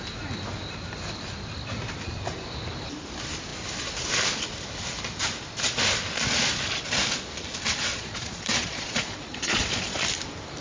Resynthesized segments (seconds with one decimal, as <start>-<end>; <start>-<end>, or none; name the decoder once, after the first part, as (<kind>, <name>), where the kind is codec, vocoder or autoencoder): 7.9-10.0 (vocoder, Vocos)